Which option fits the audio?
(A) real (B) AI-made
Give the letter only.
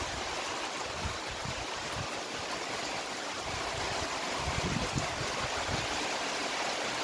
A